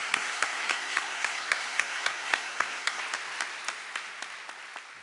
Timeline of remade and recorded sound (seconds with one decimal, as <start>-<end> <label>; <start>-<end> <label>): 0.0-3.0 remade; 3.0-5.0 recorded